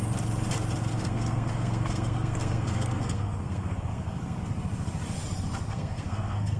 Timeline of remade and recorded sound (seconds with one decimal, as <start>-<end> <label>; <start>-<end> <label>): 0.0-0.9 recorded; 0.9-4.4 remade; 4.4-5.7 recorded; 5.7-6.6 remade